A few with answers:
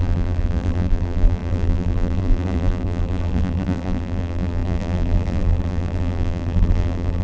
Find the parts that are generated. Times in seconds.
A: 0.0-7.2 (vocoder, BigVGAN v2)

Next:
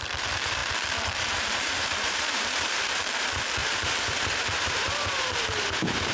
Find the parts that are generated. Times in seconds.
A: 0.0-6.1 (vocoder, BigVGAN v2)

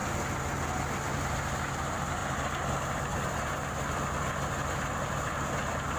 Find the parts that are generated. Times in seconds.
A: 1.7-2.2 (vocoder, BigVGAN v2)

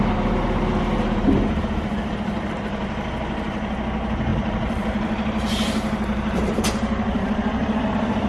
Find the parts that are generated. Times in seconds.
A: 4.3-7.9 (vocoder, BigVGAN v2)

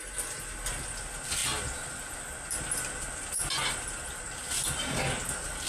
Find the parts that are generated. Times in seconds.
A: none

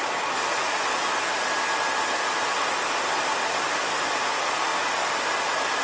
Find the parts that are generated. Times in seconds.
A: 4.7-5.8 (vocoder, BigVGAN v2)